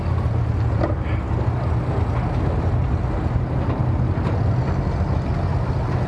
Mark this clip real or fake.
real